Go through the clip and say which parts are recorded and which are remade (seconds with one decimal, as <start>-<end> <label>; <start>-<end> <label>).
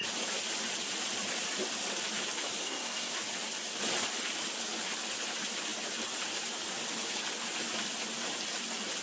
0.0-2.6 recorded; 2.6-3.1 remade; 3.1-9.0 recorded